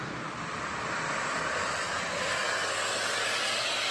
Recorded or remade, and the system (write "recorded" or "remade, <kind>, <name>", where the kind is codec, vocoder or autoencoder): recorded